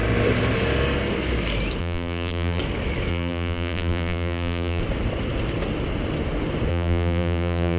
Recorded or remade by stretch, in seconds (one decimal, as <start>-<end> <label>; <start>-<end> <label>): 0.0-1.8 recorded; 1.8-2.6 remade; 2.6-3.1 recorded; 3.1-4.8 remade; 4.8-6.7 recorded; 6.7-7.8 remade